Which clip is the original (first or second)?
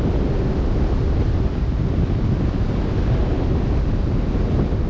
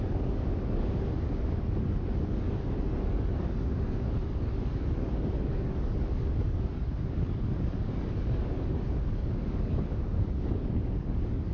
first